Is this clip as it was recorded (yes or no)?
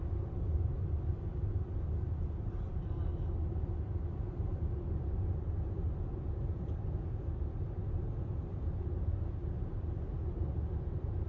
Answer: yes